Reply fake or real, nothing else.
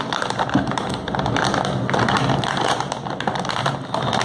real